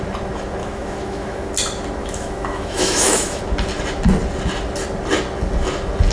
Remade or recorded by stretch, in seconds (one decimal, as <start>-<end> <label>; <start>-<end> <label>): 0.0-0.6 recorded; 0.6-1.5 remade; 1.5-2.0 recorded; 2.0-3.4 remade; 3.4-6.1 recorded